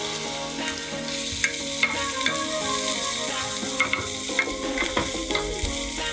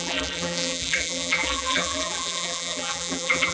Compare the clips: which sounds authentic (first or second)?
first